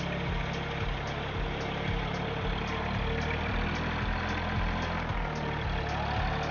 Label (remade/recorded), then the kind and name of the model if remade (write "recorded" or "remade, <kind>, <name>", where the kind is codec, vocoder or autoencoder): recorded